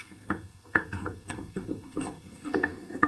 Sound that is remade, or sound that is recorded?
remade